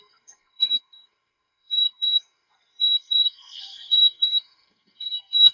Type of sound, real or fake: fake